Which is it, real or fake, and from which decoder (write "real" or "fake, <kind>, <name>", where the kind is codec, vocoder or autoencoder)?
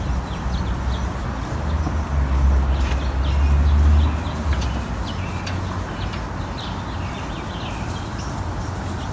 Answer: real